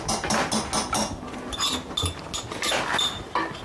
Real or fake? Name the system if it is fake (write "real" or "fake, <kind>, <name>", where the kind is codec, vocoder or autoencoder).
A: real